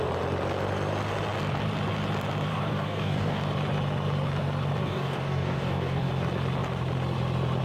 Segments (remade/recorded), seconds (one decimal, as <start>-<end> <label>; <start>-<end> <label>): 0.0-2.5 recorded; 2.5-3.4 remade; 3.4-4.8 recorded; 4.8-6.1 remade; 6.1-7.6 recorded